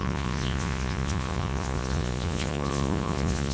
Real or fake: fake